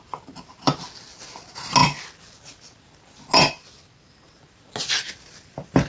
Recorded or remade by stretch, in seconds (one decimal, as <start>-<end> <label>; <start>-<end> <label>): 0.0-5.9 recorded